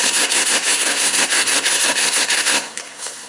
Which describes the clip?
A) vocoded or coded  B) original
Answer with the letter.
A